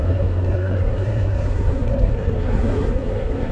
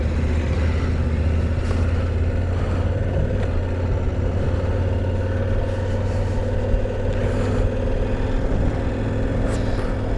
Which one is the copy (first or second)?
first